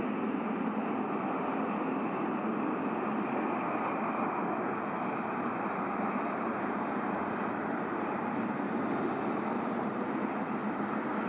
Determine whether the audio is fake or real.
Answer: real